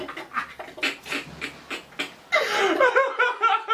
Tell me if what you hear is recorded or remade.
recorded